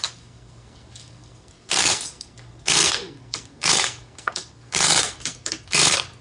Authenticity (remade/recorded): remade